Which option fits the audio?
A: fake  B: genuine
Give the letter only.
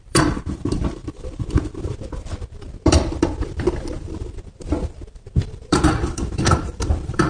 A